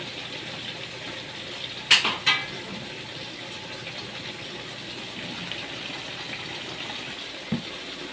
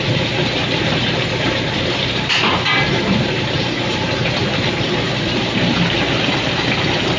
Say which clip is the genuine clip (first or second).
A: first